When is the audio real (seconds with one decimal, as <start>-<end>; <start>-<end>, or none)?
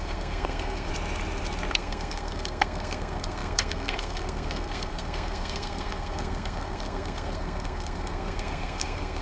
0.9-1.7